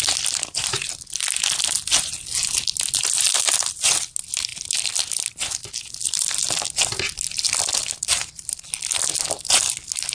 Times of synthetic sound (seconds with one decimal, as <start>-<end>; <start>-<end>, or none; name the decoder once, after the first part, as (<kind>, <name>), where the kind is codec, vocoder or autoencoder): none